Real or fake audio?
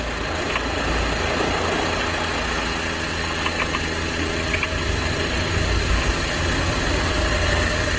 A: real